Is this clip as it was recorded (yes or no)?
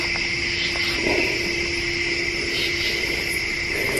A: yes